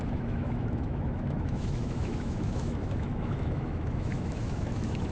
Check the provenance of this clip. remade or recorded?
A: remade